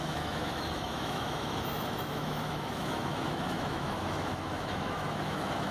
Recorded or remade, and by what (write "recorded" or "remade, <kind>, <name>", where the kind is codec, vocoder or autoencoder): remade, autoencoder, DAC-VAE